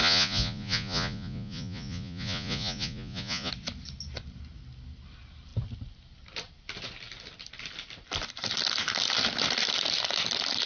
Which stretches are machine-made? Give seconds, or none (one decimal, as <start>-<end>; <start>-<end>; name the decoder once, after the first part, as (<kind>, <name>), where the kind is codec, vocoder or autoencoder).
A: 0.0-3.5 (vocoder, Vocos)